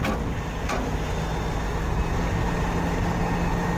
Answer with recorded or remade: recorded